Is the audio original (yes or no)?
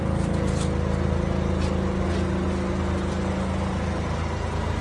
yes